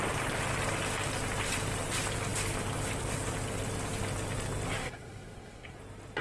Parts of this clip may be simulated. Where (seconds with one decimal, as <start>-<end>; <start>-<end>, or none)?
4.8-5.8